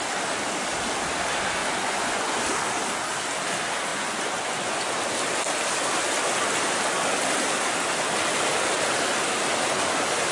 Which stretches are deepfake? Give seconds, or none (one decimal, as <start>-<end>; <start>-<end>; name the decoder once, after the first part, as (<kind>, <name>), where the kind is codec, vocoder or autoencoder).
1.6-2.4 (vocoder, Vocos); 3.9-4.9